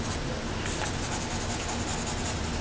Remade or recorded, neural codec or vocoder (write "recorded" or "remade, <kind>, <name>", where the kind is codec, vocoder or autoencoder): recorded